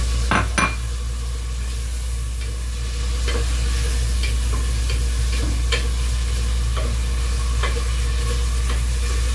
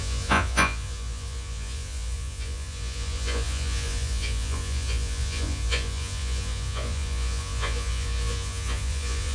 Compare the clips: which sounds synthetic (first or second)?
second